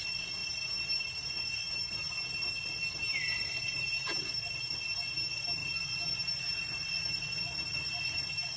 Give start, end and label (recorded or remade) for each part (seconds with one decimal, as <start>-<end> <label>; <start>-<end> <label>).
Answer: 0.0-0.4 recorded; 0.4-2.1 remade; 2.1-3.0 recorded; 3.0-3.9 remade; 3.9-8.6 recorded